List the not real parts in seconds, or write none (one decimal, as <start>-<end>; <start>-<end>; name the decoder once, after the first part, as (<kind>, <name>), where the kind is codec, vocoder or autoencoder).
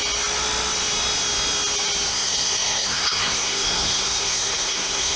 2.1-5.2 (codec, SNAC)